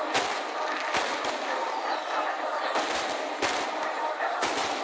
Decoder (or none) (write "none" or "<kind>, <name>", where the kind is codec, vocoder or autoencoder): none